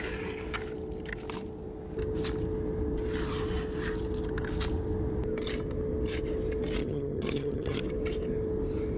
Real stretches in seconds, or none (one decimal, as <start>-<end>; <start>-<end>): 0.0-6.8; 7.8-9.0